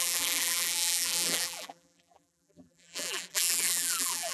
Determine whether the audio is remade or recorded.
remade